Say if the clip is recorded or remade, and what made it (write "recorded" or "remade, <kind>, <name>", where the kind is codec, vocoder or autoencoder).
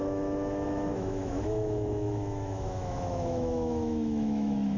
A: remade, autoencoder, DAC-VAE